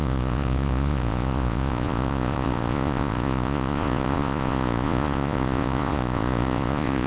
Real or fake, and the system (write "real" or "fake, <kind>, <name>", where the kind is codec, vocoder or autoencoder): fake, vocoder, Vocos